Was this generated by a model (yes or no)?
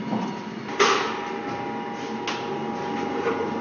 no